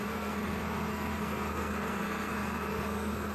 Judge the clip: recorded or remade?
remade